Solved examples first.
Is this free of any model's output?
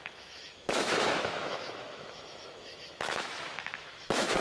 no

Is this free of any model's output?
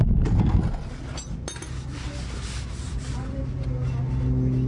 yes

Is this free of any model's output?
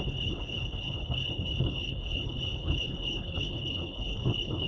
no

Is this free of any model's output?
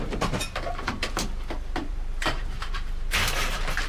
no